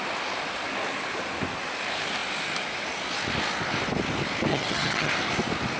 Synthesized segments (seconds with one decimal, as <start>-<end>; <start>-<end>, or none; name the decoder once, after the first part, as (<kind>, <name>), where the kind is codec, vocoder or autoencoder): 4.5-5.1 (vocoder, HiFi-GAN)